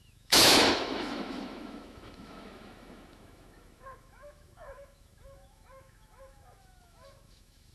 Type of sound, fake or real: fake